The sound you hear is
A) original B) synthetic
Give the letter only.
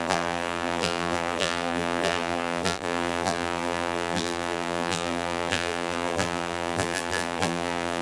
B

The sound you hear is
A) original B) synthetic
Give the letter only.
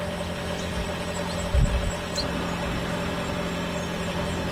A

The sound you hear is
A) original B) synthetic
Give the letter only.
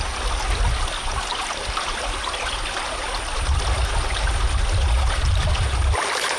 A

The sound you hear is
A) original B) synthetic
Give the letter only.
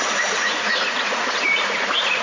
B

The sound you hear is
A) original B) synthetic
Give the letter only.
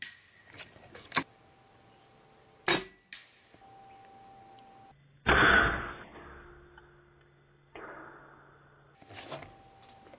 A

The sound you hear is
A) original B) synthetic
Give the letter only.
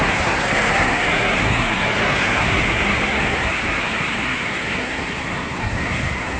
B